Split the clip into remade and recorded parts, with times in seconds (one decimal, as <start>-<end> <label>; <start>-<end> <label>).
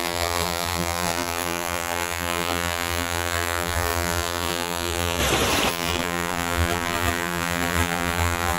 0.0-5.2 remade; 5.2-5.7 recorded; 5.7-8.6 remade